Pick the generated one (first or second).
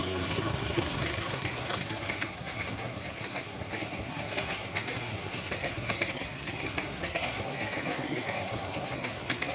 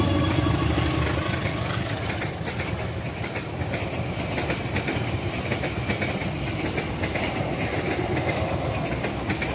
first